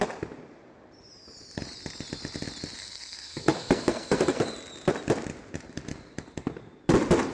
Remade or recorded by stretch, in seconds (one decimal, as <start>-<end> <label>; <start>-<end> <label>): 0.0-2.8 recorded; 2.8-4.4 remade; 4.4-7.3 recorded